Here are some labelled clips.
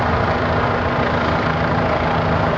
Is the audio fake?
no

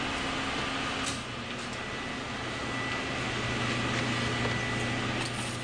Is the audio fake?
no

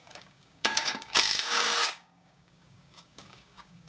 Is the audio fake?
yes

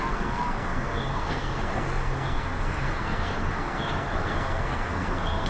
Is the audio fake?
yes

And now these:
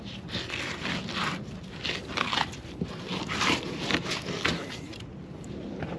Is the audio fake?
no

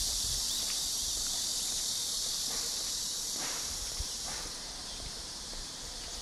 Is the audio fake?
yes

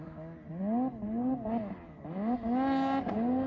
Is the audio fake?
no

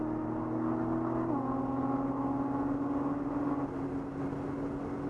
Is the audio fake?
no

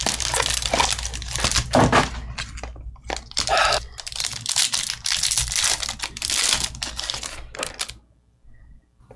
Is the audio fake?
no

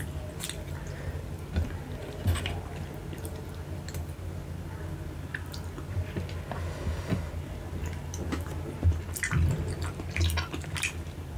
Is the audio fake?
no